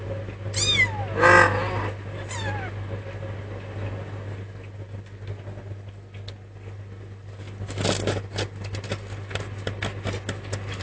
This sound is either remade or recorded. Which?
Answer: recorded